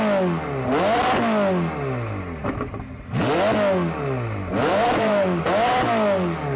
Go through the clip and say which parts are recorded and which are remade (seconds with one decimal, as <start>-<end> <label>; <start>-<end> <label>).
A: 0.0-2.4 recorded; 2.4-3.2 remade; 3.2-4.6 recorded; 4.6-5.4 remade; 5.4-6.6 recorded